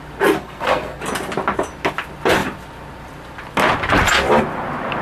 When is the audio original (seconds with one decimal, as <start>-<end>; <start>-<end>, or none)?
0.0-0.4; 1.0-5.0